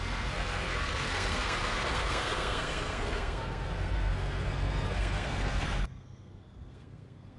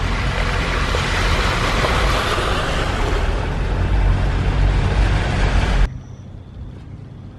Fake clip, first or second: first